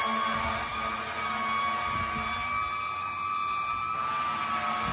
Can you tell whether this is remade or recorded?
recorded